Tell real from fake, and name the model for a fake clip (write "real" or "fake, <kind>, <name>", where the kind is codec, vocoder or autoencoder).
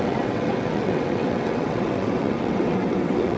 fake, vocoder, WaveNeXt